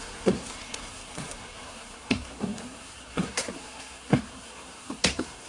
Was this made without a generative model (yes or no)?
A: no